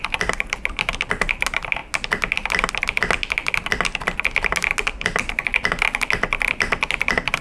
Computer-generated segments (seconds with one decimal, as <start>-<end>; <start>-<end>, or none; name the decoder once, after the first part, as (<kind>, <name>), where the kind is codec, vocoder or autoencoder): none